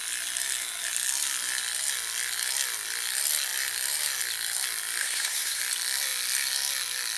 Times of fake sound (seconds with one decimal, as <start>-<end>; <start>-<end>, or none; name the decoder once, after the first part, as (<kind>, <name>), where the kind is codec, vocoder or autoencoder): 5.0-5.6 (codec, SNAC)